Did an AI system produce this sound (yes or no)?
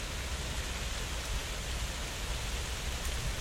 no